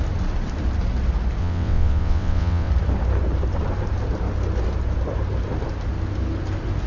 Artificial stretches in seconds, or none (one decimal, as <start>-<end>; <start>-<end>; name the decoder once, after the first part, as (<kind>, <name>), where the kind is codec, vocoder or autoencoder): 1.4-2.7 (vocoder, WaveNeXt)